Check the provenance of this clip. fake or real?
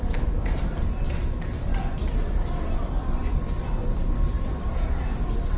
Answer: real